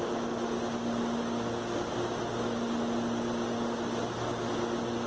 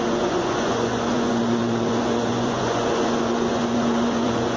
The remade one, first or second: second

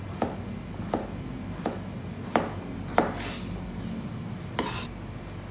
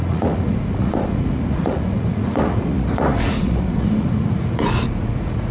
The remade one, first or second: second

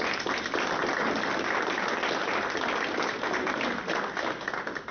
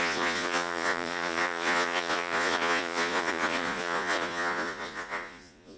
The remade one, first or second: second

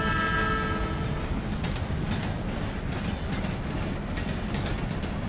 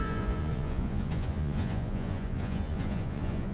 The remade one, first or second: second